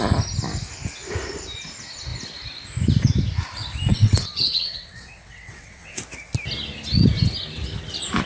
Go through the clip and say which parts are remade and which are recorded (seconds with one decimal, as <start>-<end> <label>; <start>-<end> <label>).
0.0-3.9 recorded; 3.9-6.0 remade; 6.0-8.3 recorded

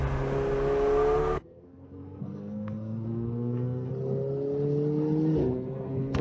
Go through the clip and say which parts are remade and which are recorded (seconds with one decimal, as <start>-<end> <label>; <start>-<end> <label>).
0.0-1.2 recorded; 1.2-3.9 remade; 3.9-5.4 recorded; 5.4-6.2 remade

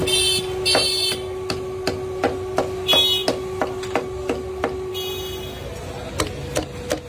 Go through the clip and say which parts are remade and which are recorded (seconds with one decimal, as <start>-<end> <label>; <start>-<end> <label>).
0.0-7.1 recorded

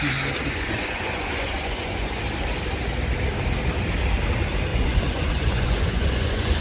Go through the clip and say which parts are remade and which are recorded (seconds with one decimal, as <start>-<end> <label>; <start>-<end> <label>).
0.0-0.5 recorded; 0.5-2.2 remade; 2.2-4.7 recorded; 4.7-6.6 remade